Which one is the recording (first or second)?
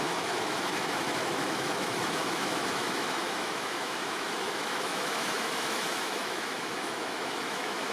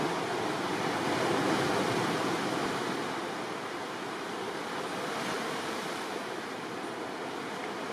second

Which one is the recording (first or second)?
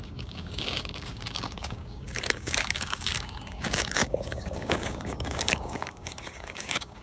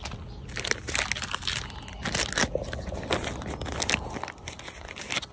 second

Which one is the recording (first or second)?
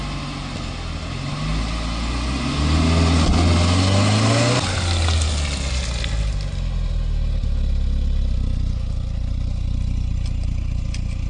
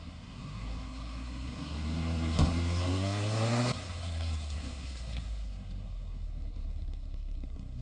first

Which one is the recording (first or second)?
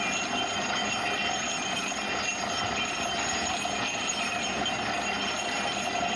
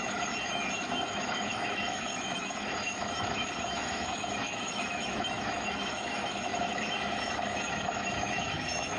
first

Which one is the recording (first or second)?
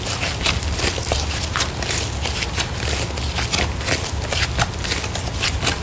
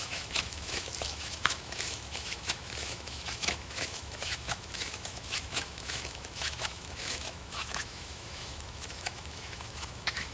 first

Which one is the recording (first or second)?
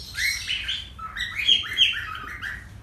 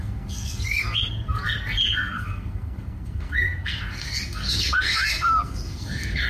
first